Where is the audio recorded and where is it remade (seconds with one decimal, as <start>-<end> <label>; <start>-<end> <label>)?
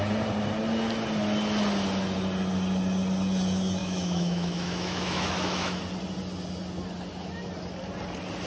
0.0-3.8 recorded; 3.8-5.8 remade; 5.8-8.5 recorded